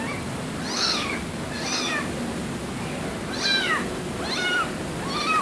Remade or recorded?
recorded